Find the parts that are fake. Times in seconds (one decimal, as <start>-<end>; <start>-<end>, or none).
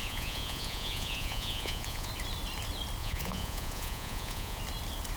0.0-2.1; 3.0-4.6